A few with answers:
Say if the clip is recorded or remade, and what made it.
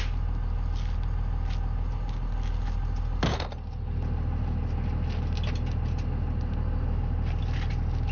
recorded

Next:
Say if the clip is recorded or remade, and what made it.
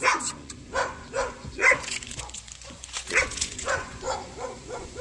remade, vocoder, Vocos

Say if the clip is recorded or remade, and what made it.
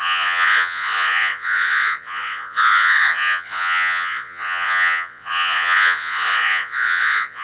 remade, vocoder, Vocos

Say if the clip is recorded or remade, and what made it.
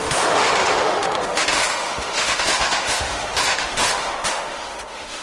remade, autoencoder, DAC-VAE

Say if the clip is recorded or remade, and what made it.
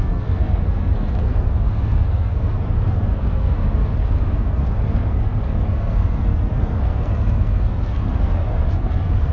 remade, codec, SNAC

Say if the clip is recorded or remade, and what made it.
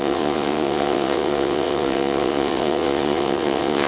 remade, vocoder, WaveNeXt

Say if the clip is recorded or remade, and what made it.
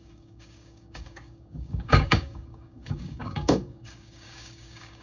remade, codec, DAC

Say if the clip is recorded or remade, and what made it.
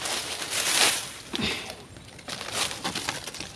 recorded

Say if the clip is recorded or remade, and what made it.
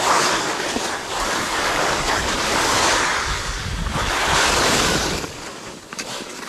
remade, codec, DAC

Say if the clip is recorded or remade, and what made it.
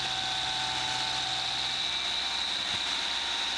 recorded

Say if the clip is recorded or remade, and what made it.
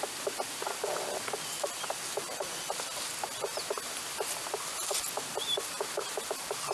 recorded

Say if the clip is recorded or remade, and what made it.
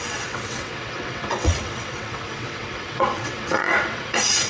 remade, vocoder, WaveNeXt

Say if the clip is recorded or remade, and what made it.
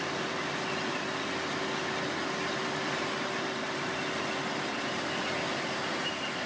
recorded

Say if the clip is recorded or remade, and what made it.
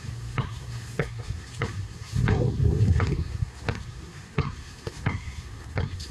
remade, codec, SNAC